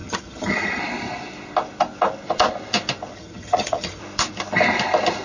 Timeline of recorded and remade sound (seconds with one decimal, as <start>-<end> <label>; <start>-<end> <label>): 0.0-0.8 remade; 0.8-3.1 recorded; 3.1-4.0 remade; 4.0-5.2 recorded